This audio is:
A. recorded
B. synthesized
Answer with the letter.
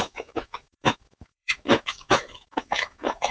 B